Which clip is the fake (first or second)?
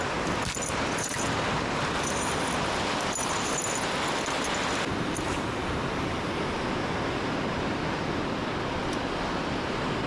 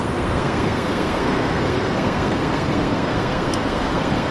second